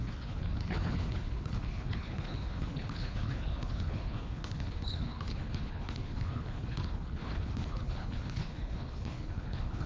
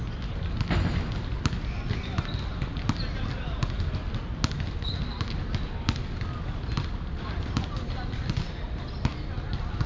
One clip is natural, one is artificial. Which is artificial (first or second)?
first